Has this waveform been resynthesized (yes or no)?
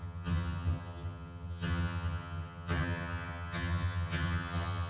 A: yes